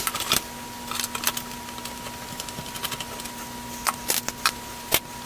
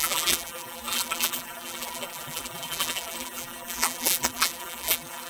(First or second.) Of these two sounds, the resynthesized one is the second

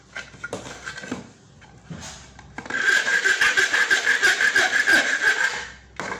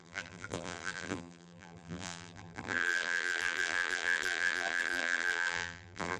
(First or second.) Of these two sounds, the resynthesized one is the second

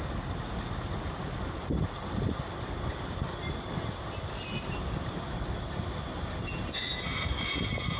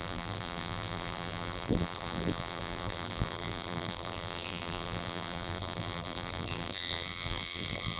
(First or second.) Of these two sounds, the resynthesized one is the second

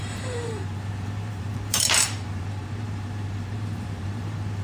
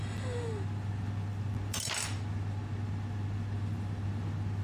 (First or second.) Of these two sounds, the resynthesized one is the first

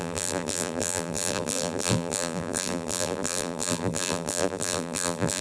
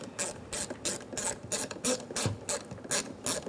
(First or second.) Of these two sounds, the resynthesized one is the first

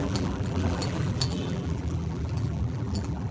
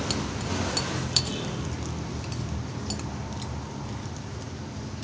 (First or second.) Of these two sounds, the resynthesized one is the first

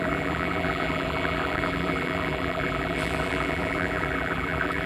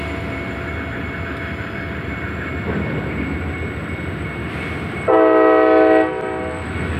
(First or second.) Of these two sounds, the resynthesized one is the first